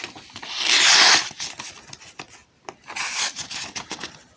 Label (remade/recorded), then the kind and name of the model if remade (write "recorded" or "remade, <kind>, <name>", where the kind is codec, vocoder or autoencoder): recorded